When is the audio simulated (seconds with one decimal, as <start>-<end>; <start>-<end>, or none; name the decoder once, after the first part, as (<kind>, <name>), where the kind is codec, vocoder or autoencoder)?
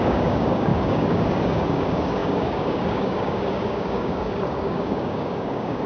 0.0-5.9 (codec, DAC)